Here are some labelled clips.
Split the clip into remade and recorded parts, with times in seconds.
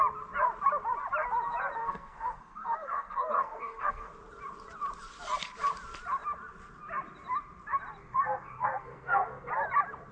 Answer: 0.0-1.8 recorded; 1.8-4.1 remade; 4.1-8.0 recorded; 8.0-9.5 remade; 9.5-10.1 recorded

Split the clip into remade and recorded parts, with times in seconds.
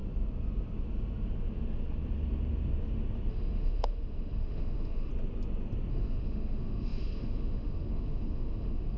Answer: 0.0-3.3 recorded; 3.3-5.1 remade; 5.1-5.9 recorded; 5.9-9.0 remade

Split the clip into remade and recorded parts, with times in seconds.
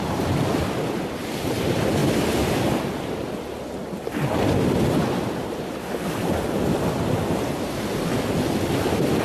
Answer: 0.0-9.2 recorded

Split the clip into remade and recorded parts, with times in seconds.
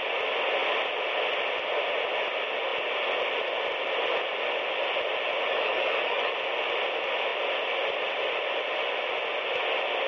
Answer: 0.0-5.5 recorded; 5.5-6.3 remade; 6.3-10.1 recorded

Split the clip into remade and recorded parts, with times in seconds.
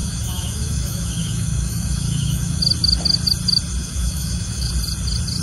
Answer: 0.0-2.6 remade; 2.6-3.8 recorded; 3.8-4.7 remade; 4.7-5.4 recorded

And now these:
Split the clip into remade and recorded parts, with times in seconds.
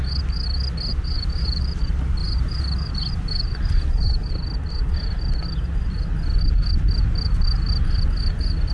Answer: 0.0-0.9 recorded; 0.9-1.8 remade; 1.8-2.2 recorded; 2.2-4.3 remade; 4.3-8.7 recorded